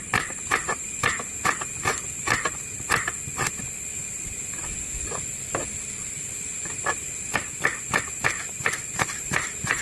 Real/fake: fake